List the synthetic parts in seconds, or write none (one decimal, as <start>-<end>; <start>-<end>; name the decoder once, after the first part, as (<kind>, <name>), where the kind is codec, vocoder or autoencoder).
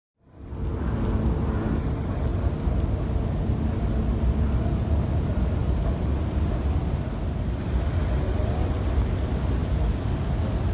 none